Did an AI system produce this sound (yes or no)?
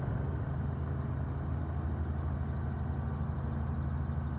no